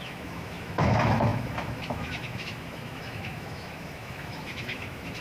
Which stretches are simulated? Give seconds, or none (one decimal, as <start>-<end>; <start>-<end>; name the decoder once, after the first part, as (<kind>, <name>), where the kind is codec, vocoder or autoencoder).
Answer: 0.0-5.2 (autoencoder, DAC-VAE)